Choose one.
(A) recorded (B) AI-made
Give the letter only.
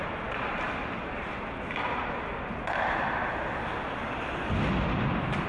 A